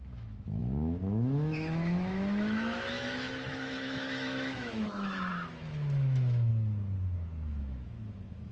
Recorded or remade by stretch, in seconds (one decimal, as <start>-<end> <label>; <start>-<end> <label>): 0.0-6.5 remade; 6.5-7.5 recorded; 7.5-8.5 remade